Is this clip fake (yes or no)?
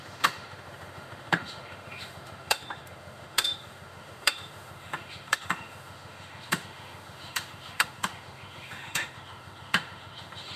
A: yes